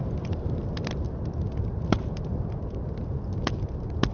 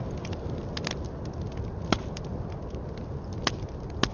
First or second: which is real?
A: second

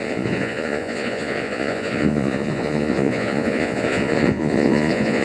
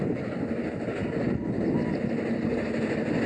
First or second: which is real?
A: second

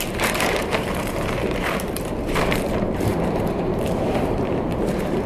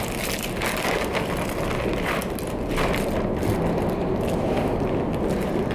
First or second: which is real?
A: second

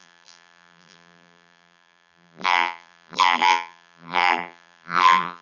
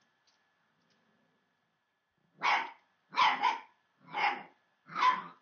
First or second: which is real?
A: second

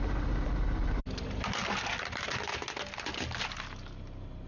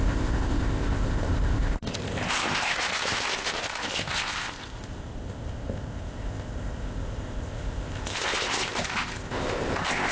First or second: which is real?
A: first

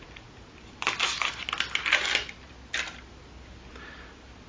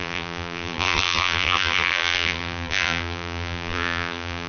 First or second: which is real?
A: first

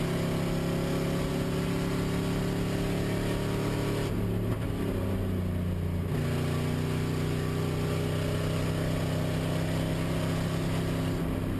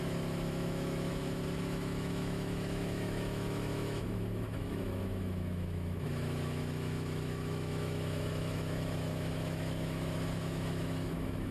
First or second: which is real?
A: first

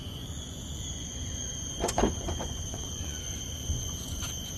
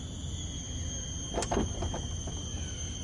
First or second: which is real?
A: second